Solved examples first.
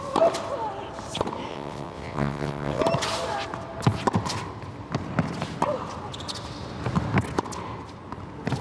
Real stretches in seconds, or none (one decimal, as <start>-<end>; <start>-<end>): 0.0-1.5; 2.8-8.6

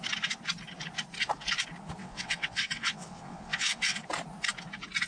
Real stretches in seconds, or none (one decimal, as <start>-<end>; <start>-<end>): 0.0-2.0; 4.0-5.1

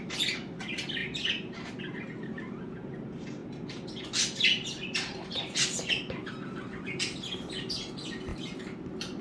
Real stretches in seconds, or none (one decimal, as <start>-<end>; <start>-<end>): 0.0-9.2

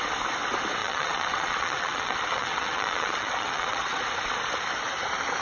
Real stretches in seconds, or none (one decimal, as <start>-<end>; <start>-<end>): 0.0-0.8; 4.0-5.4